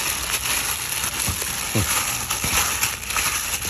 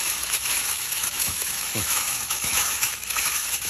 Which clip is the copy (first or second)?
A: second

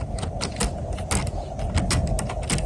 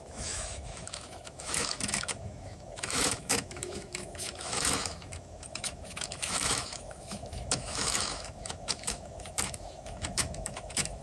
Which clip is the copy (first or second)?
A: second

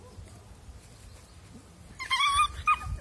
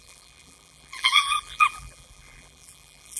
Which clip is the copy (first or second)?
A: second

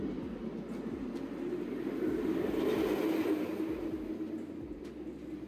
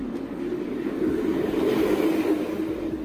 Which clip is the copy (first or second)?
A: second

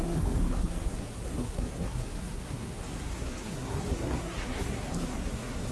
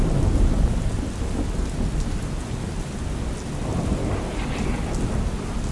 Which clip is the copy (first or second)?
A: first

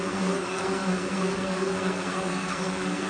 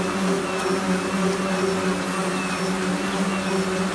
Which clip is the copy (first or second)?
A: first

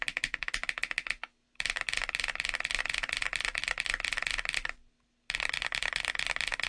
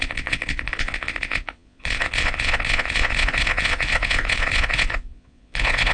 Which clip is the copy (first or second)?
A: second